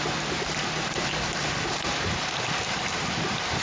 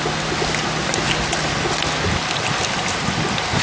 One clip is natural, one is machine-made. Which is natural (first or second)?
second